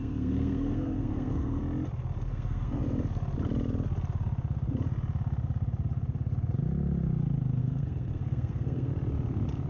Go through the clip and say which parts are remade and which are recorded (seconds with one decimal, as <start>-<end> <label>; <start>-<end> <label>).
0.0-1.6 remade; 1.6-2.3 recorded; 2.3-2.8 remade; 2.8-7.6 recorded; 7.6-8.9 remade; 8.9-9.7 recorded

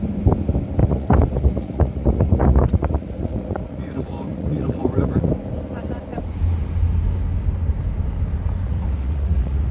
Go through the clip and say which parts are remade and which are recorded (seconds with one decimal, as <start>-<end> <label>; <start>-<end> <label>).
0.0-0.8 recorded; 0.8-5.3 remade; 5.3-8.7 recorded; 8.7-9.7 remade

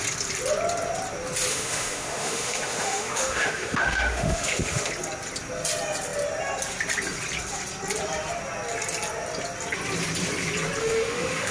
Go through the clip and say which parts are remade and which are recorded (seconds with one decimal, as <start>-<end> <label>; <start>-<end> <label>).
0.0-1.5 recorded; 1.5-4.9 remade; 4.9-10.8 recorded; 10.8-11.5 remade

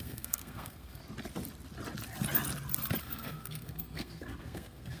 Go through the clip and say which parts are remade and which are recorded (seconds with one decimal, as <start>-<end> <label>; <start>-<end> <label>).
0.0-1.0 remade; 1.0-3.0 recorded; 3.0-5.0 remade